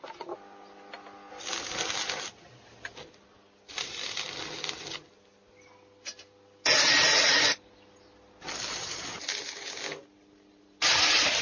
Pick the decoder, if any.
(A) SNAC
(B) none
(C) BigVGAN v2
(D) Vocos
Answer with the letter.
B